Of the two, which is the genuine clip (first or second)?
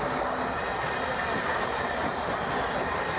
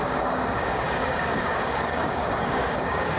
first